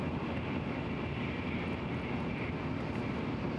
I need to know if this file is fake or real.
real